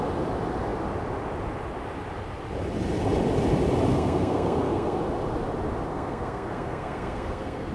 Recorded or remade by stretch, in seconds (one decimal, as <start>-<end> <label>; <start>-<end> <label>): 0.0-3.9 recorded; 3.9-5.0 remade; 5.0-5.9 recorded; 5.9-7.7 remade